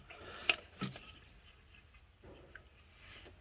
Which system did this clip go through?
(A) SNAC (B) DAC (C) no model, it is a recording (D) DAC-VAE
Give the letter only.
C